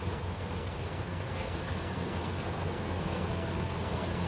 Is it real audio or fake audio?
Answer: fake